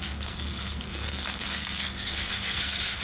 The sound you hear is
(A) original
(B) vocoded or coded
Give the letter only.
B